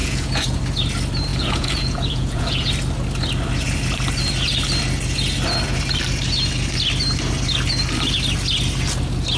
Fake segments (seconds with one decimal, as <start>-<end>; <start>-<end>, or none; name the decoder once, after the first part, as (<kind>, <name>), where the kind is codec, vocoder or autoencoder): 0.0-0.6 (vocoder, Vocos); 1.3-2.7